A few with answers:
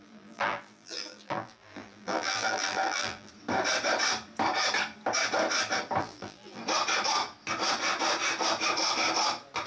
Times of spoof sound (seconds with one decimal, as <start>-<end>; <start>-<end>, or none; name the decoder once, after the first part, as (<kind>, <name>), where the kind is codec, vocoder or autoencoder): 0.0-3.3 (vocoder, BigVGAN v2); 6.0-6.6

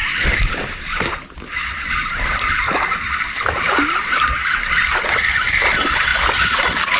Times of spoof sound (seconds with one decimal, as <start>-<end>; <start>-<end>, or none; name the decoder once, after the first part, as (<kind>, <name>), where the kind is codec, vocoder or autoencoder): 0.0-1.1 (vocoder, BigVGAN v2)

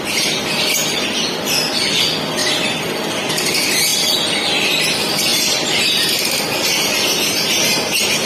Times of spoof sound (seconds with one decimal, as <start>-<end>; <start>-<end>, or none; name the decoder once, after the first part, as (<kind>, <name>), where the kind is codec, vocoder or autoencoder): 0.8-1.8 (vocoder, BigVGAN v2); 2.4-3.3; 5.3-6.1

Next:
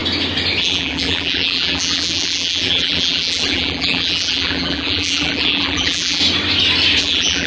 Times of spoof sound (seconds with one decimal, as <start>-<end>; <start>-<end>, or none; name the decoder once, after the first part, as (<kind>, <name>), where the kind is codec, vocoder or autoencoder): 0.6-6.2 (vocoder, BigVGAN v2); 7.0-7.5

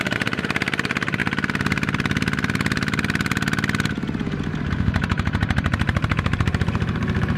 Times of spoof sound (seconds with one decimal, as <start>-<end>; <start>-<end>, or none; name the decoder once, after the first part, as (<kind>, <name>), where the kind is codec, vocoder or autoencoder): 0.0-1.2 (vocoder, BigVGAN v2); 4.7-7.4

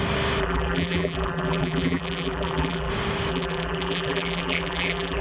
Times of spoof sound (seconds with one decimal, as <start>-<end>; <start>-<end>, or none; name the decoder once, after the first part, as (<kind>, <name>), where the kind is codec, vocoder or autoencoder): 0.4-2.9 (vocoder, BigVGAN v2); 3.3-5.2

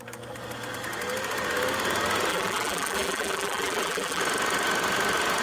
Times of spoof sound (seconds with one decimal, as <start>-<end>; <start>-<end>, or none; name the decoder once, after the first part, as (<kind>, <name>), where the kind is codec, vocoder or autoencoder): 2.3-4.2 (vocoder, BigVGAN v2)

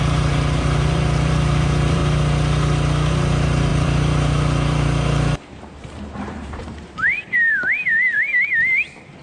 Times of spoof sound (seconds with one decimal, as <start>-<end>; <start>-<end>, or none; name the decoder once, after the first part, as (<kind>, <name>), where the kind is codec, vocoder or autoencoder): 0.0-2.0 (vocoder, BigVGAN v2); 3.1-9.2